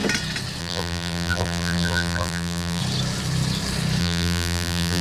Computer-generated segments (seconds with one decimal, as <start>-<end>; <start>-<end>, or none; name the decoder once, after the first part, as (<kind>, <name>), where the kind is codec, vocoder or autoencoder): 0.6-2.8 (vocoder, BigVGAN v2); 4.0-5.0